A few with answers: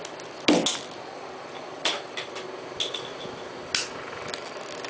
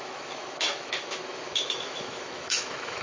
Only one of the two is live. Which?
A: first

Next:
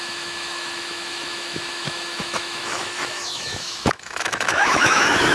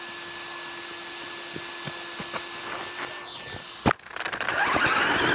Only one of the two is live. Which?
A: second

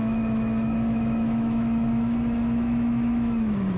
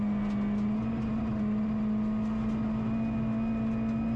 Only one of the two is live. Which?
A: second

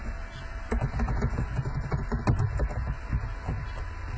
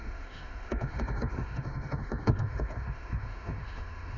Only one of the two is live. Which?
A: first